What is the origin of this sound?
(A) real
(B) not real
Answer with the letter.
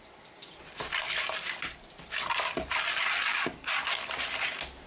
A